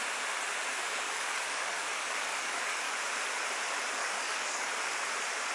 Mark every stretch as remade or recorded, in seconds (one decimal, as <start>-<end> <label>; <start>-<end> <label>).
0.0-0.7 recorded; 0.7-2.9 remade; 2.9-4.0 recorded; 4.0-4.7 remade; 4.7-5.5 recorded